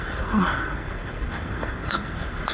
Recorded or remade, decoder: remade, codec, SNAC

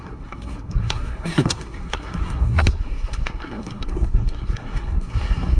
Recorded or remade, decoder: remade, codec, SNAC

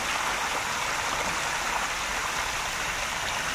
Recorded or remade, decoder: recorded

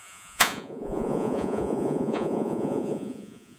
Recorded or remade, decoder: remade, vocoder, Vocos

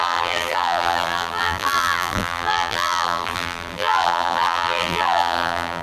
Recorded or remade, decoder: remade, vocoder, BigVGAN v2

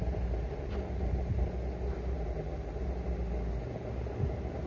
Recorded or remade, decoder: recorded